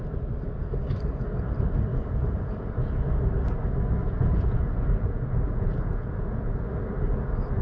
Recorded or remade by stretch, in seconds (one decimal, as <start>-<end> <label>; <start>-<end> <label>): 0.0-1.9 recorded; 1.9-2.5 remade; 2.5-4.0 recorded; 4.0-6.6 remade; 6.6-7.6 recorded